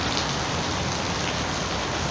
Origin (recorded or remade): recorded